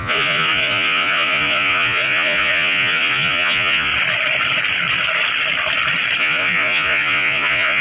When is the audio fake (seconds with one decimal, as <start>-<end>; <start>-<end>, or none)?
0.0-3.9; 6.2-7.8